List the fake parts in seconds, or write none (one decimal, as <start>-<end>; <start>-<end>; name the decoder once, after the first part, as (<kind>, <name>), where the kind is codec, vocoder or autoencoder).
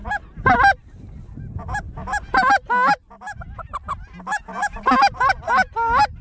none